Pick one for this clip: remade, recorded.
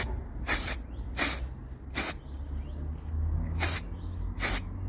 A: recorded